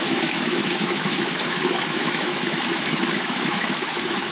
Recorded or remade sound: remade